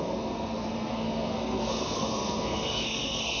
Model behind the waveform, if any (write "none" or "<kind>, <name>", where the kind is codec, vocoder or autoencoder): codec, SNAC